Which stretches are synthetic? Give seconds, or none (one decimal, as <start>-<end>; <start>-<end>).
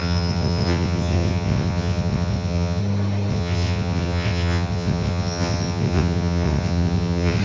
0.0-2.8; 3.3-7.4